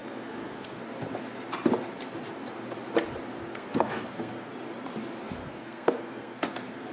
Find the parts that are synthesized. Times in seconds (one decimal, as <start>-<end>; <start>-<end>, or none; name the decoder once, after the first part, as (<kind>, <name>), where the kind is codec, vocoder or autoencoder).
0.0-0.8 (codec, SNAC); 3.5-4.5; 5.4-6.9